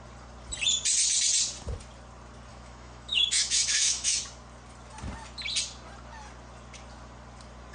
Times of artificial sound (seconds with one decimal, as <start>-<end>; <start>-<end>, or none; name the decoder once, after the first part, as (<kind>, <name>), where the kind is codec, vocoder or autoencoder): 2.5-4.2 (autoencoder, DAC-VAE)